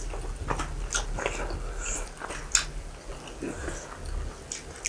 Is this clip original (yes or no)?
yes